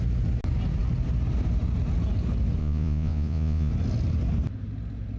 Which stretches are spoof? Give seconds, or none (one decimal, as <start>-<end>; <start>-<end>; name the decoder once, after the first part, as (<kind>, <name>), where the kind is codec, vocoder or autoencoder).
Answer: 2.6-3.7 (vocoder, Vocos)